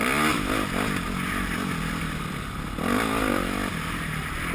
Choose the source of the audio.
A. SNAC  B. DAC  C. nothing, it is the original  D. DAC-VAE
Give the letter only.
C